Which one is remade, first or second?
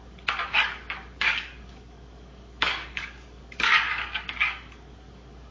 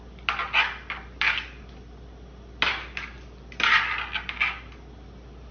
first